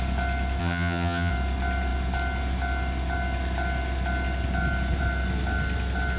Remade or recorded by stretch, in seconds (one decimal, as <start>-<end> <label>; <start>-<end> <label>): 0.0-0.6 recorded; 0.6-1.3 remade; 1.3-6.2 recorded